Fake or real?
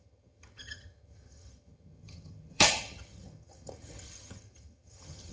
fake